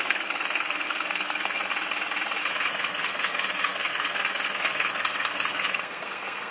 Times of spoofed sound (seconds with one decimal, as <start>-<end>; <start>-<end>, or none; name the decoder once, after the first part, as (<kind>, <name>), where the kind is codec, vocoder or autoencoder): 0.0-1.7 (codec, SNAC); 2.7-6.5